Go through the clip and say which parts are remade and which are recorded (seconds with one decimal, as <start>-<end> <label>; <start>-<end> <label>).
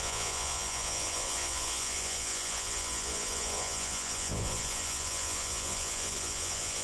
0.0-6.8 remade